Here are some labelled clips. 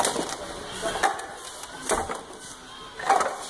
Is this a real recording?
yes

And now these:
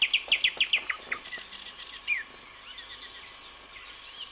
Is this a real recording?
yes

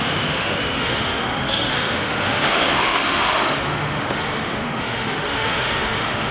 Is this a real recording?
no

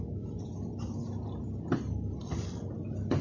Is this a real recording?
yes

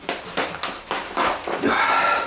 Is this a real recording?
yes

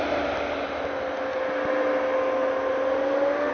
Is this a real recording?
yes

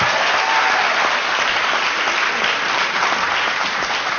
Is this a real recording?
yes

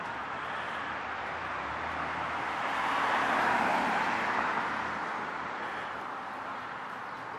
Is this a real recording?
yes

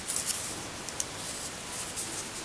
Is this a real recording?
yes